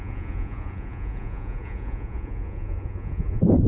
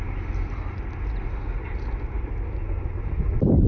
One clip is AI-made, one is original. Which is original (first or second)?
second